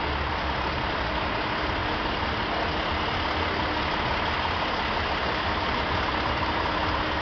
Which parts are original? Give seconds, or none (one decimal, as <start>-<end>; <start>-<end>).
0.0-7.2